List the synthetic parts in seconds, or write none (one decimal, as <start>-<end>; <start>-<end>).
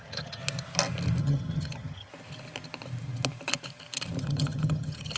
0.0-0.4; 1.2-2.1; 4.2-5.2